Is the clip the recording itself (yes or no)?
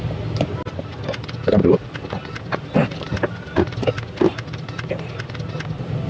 yes